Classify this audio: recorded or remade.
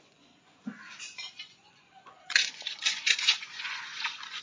remade